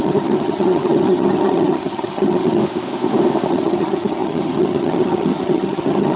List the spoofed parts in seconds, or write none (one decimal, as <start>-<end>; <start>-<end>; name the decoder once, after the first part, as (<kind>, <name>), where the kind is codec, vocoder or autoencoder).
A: 0.0-2.6 (vocoder, HiFi-GAN); 3.5-6.2